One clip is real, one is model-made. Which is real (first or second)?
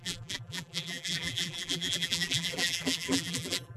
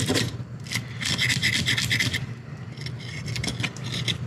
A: second